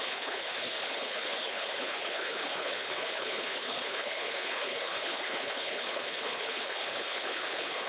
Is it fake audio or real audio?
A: fake